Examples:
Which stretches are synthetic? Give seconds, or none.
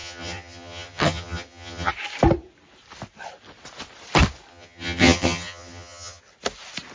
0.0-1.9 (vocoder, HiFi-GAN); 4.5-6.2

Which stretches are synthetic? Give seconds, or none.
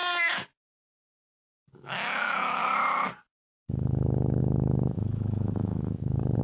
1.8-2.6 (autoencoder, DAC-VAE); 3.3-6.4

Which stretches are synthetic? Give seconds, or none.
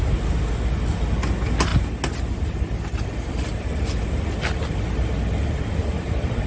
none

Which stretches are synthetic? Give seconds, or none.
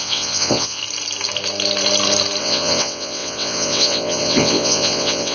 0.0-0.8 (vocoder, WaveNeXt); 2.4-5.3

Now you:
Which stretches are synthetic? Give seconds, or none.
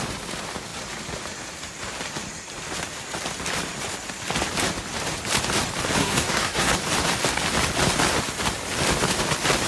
6.0-6.7 (codec, SNAC)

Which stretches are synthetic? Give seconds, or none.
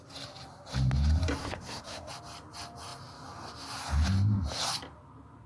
1.4-2.1 (codec, SNAC)